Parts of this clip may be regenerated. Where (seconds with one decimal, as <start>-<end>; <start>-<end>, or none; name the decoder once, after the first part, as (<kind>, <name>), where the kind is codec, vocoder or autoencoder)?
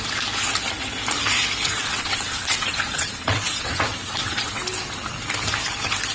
1.8-4.6 (vocoder, WaveNeXt)